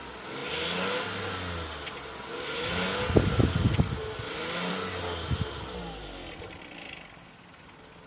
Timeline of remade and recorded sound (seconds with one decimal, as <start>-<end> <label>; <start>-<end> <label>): 0.0-8.1 recorded